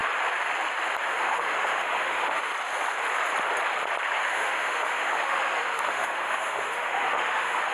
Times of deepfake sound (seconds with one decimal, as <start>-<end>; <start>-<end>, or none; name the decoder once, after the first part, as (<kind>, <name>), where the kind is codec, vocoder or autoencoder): 1.0-2.5 (autoencoder, DAC-VAE); 4.2-7.7